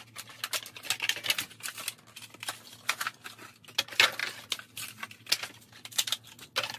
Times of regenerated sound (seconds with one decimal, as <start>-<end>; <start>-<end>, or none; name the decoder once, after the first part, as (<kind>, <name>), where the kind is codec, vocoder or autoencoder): none